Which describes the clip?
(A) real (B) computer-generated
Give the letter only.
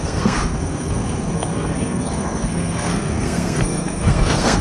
B